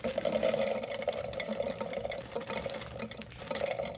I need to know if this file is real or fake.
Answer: real